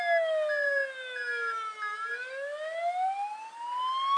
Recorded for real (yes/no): yes